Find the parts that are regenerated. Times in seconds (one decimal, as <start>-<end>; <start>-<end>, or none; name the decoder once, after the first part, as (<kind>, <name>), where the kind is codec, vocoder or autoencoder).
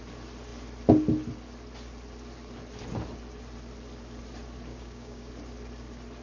4.7-5.3 (codec, DAC)